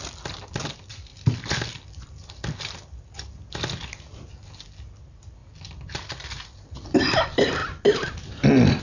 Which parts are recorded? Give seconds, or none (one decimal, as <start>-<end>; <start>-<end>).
0.0-1.1; 3.7-5.4; 7.0-8.8